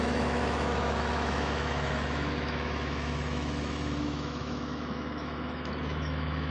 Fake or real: fake